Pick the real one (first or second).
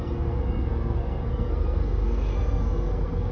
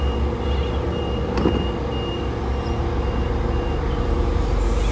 second